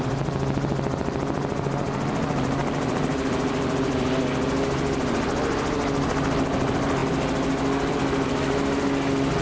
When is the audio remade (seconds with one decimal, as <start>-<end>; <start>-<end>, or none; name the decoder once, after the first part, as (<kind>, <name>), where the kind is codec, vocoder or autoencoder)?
2.6-4.2 (vocoder, BigVGAN v2)

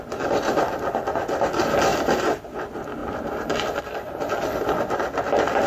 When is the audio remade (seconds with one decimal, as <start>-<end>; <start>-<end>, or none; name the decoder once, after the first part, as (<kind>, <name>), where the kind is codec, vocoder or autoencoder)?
1.9-2.4 (vocoder, BigVGAN v2)

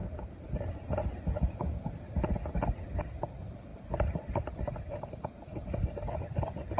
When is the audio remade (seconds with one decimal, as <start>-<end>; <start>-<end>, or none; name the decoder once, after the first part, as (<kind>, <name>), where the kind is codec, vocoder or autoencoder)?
3.0-6.8 (vocoder, BigVGAN v2)

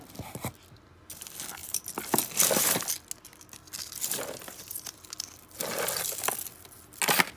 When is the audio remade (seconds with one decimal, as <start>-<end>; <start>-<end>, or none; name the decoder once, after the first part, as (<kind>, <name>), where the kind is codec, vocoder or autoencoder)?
1.6-2.6 (vocoder, BigVGAN v2); 3.6-5.2

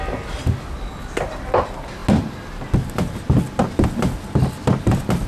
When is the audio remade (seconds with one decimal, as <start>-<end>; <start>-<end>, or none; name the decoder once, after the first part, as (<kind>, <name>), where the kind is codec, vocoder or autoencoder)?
none

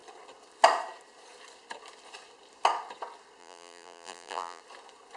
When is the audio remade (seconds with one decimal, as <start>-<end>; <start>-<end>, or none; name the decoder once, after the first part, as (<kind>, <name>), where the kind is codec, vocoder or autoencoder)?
3.4-4.6 (vocoder, BigVGAN v2)